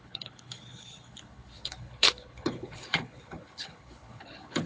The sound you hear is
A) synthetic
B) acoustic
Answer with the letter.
A